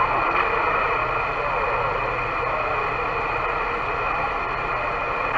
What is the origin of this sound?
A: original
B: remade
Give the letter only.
A